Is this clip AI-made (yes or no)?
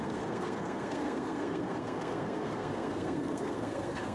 yes